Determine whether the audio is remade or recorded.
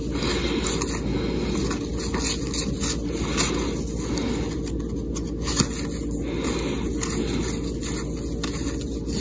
recorded